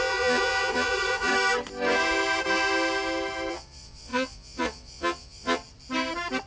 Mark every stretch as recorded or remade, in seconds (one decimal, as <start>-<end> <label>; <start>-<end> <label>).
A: 0.0-1.3 remade; 1.3-3.5 recorded; 3.5-5.6 remade; 5.6-6.5 recorded